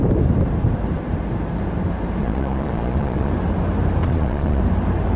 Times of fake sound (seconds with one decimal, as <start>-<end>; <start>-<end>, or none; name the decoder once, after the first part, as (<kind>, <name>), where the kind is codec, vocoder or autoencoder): 2.2-3.3 (vocoder, Vocos); 4.0-4.6